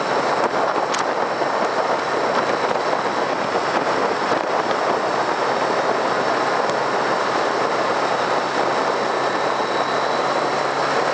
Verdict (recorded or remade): recorded